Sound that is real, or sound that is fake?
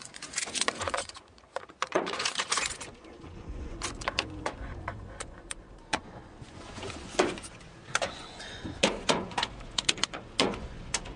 fake